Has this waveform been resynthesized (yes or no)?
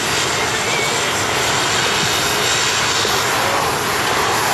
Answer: no